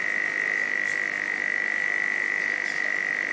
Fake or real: real